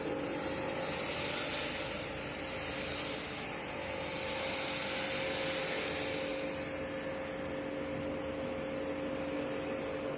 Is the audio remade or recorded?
recorded